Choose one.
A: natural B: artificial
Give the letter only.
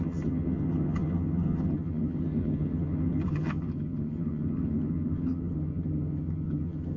B